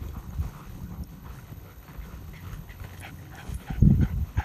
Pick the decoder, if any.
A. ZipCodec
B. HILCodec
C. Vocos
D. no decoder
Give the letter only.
B